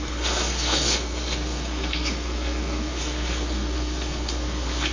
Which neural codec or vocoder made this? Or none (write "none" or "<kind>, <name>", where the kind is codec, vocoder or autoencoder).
codec, SNAC